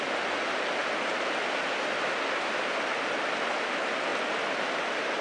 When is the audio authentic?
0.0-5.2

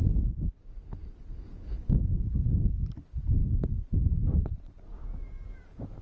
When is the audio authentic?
0.0-5.0

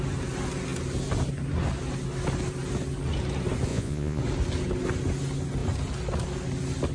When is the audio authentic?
0.0-3.7; 4.2-6.9

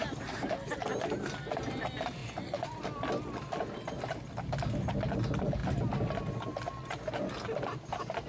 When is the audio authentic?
0.0-2.2; 2.8-8.3

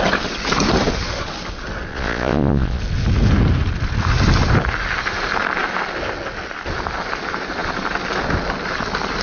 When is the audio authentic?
0.0-1.9; 2.8-9.2